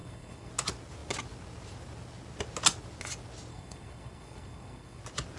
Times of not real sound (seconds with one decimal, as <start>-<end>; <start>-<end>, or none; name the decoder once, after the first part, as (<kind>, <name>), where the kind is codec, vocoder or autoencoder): 0.0-0.5 (codec, SNAC); 3.5-5.0